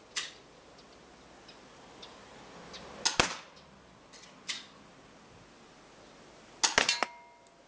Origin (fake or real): real